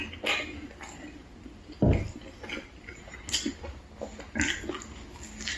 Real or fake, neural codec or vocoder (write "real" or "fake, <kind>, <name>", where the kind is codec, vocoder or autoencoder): real